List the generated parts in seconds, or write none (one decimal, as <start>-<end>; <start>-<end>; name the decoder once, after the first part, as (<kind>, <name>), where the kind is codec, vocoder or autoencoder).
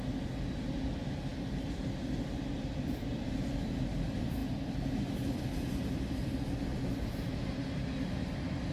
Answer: none